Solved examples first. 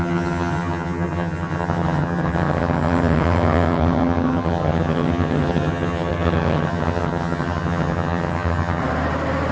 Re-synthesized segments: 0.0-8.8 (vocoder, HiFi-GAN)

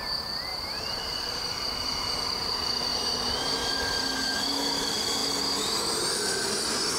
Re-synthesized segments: 0.5-1.4 (vocoder, BigVGAN v2); 2.9-3.8

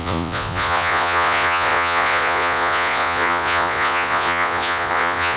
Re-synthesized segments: 0.0-5.4 (vocoder, Vocos)

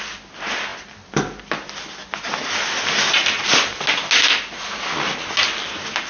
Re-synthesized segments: none